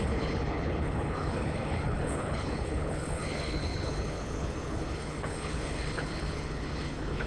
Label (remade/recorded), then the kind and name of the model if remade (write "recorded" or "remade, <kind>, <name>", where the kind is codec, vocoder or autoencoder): remade, codec, HILCodec